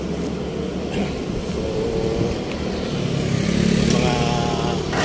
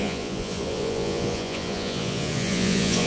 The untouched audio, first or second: first